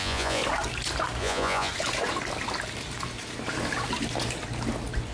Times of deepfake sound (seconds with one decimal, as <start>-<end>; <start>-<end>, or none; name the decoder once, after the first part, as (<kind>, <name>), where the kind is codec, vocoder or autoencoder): 0.0-0.4 (vocoder, Vocos); 1.2-1.7